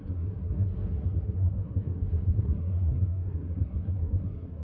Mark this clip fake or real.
fake